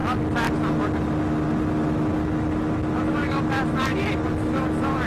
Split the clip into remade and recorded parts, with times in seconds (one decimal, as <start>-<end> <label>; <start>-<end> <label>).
0.0-5.1 recorded